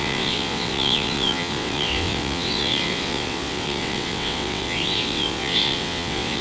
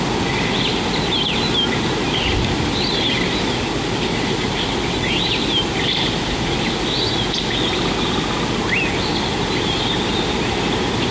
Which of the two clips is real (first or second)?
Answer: second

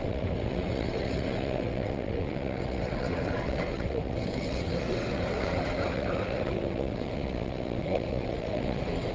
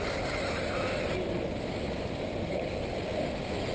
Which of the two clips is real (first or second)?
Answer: second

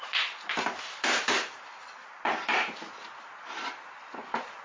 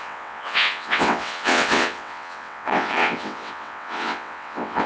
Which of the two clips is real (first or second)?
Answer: first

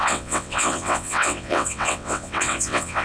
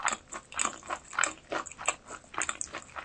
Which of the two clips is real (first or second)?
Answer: second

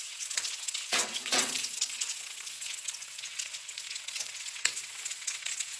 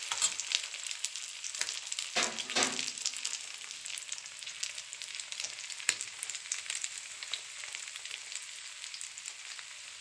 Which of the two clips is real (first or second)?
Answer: second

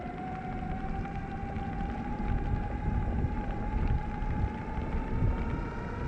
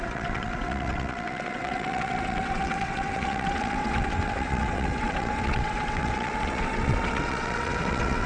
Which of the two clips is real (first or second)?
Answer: first